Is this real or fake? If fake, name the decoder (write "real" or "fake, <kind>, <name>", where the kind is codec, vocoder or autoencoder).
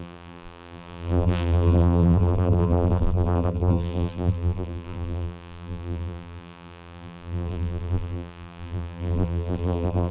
fake, vocoder, BigVGAN v2